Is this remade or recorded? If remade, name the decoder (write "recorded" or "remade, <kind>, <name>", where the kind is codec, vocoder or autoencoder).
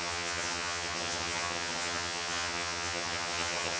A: remade, vocoder, HiFi-GAN